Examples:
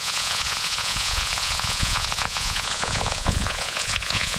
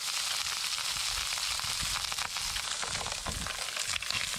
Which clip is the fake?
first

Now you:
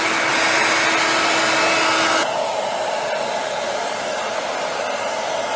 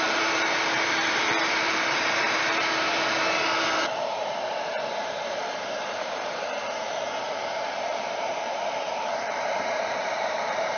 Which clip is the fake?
second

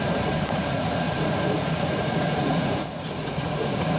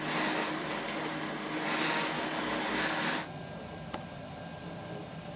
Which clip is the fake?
first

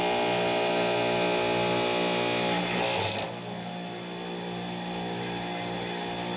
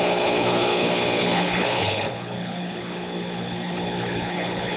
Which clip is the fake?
second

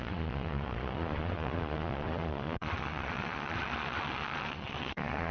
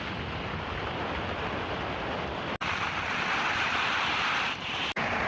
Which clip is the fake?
first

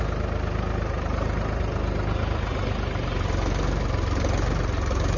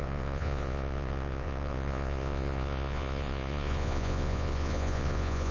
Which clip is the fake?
second